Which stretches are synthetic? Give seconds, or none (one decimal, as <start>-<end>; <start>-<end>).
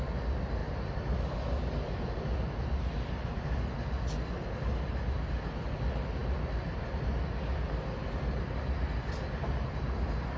none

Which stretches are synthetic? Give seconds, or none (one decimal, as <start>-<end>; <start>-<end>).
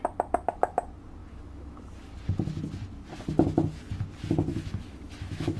1.2-1.8; 4.5-5.6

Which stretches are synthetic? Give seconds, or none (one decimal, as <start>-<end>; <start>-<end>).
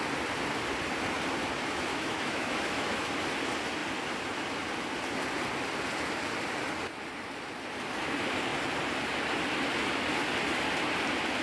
1.9-3.1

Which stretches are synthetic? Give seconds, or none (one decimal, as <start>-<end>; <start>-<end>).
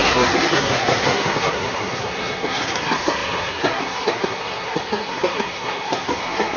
0.0-6.6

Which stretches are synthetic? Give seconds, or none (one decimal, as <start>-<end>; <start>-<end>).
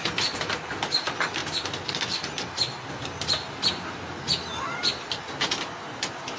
none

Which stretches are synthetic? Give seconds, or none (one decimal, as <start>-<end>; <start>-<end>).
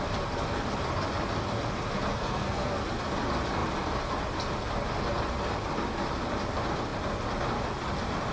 2.1-2.8